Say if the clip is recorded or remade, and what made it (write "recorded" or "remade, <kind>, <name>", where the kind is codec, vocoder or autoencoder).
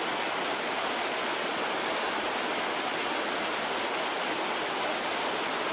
recorded